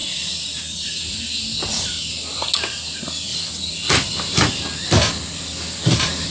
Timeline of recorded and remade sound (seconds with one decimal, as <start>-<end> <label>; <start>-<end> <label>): 0.0-1.0 remade; 1.0-3.3 recorded; 3.3-4.2 remade; 4.2-6.3 recorded